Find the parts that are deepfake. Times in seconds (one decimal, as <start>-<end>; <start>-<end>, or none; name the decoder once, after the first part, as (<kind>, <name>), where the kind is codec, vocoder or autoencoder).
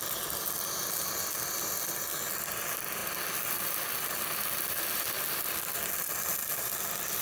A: none